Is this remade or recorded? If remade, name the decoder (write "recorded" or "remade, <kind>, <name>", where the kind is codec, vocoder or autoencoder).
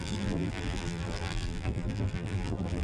remade, vocoder, BigVGAN v2